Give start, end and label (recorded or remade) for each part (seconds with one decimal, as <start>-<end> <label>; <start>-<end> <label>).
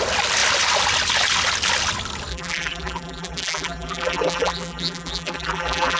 0.0-2.3 recorded; 2.3-6.0 remade